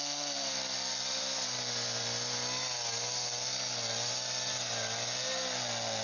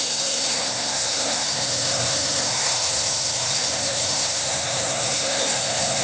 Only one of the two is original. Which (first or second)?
first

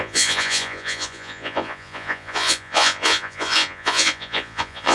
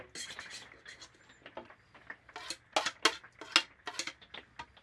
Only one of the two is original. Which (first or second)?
second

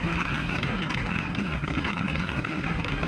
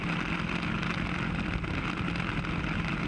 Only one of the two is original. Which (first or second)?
second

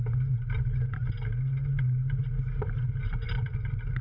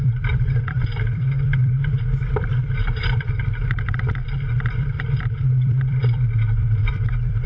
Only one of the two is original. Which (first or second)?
first